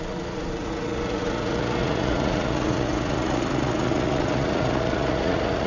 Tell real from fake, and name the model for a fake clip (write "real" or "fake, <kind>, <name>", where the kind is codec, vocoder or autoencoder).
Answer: fake, vocoder, Vocos